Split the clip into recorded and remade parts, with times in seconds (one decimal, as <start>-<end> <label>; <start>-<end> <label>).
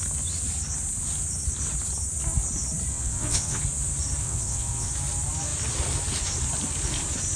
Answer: 0.0-2.9 recorded; 2.9-3.6 remade; 3.6-4.2 recorded; 4.2-4.9 remade; 4.9-7.4 recorded